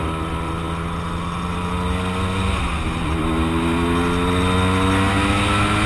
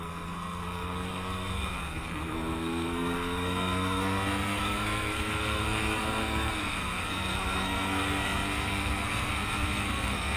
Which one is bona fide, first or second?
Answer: first